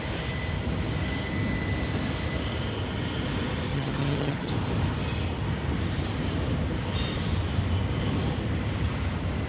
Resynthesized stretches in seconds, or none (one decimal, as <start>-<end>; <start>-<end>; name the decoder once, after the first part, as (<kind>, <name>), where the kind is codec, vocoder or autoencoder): 3.7-4.5 (vocoder, HiFi-GAN)